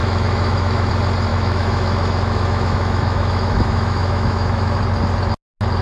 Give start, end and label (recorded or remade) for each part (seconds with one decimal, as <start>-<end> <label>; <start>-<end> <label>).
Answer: 0.0-0.9 remade; 0.9-1.3 recorded; 1.3-4.8 remade; 4.8-5.8 recorded